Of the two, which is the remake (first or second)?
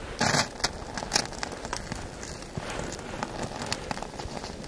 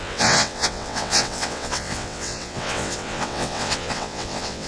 second